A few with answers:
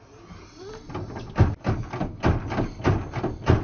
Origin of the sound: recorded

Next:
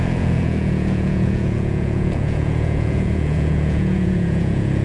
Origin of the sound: remade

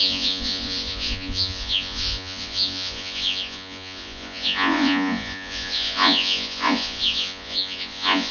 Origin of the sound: remade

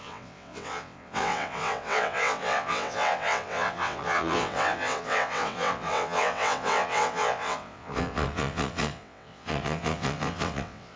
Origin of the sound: remade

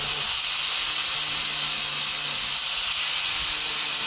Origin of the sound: recorded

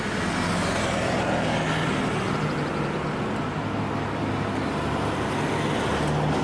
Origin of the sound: recorded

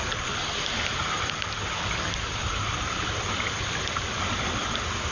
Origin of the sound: recorded